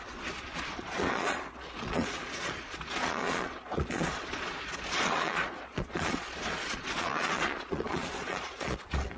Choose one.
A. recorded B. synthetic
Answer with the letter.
B